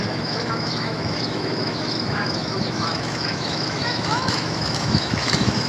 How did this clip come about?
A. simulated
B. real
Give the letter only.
A